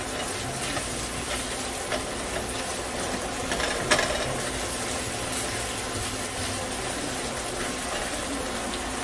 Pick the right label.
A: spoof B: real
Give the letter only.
B